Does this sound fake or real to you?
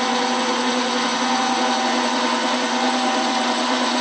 fake